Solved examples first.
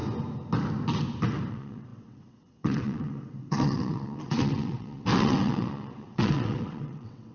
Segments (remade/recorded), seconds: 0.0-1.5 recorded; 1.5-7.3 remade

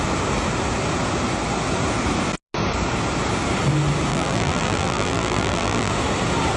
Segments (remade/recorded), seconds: 0.0-4.1 recorded; 4.1-5.9 remade; 5.9-6.6 recorded

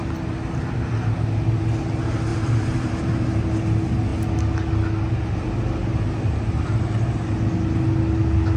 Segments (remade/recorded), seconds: 0.0-2.3 recorded; 2.3-3.5 remade; 3.5-8.6 recorded

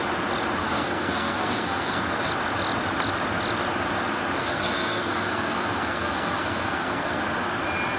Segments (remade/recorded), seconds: 0.0-0.6 recorded; 0.6-2.3 remade; 2.3-4.4 recorded; 4.4-7.2 remade; 7.2-8.0 recorded

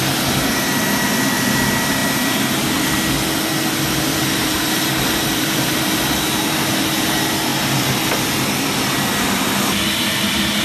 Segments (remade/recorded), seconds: 0.0-4.4 recorded; 4.4-6.4 remade; 6.4-10.6 recorded

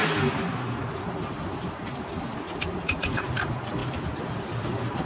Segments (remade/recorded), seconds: 0.0-1.2 recorded; 1.2-3.8 remade; 3.8-4.4 recorded; 4.4-5.0 remade

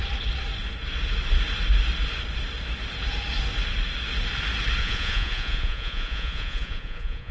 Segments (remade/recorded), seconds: 0.0-4.8 recorded; 4.8-7.3 remade